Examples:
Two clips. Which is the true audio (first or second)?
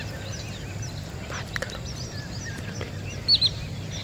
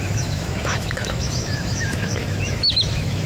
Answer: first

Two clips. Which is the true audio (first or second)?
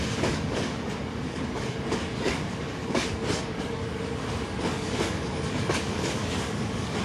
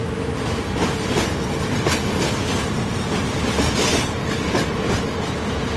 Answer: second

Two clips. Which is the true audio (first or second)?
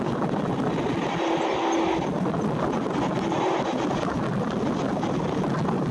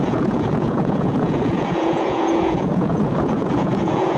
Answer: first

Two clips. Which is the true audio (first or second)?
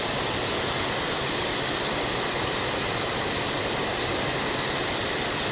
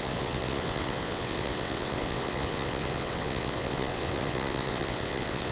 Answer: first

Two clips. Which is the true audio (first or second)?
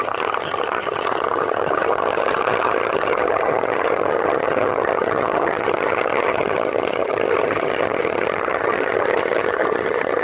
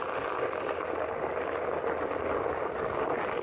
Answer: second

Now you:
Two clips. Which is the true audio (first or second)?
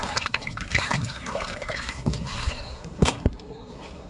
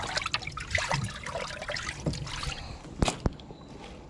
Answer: second